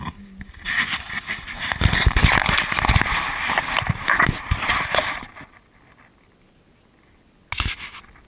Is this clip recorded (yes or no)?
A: yes